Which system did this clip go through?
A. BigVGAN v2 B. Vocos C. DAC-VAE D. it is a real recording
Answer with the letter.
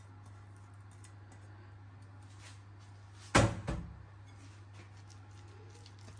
D